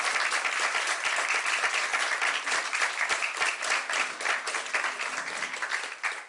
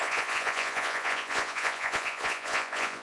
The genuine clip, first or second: first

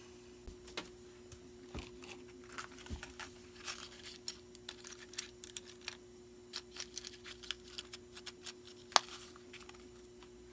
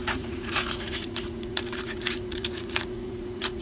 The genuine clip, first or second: first